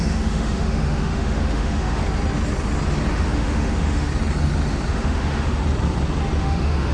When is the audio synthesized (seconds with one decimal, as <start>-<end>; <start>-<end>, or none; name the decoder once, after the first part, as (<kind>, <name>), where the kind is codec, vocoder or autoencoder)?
0.0-2.0 (autoencoder, DAC-VAE); 3.1-4.1; 4.9-5.6; 6.4-6.9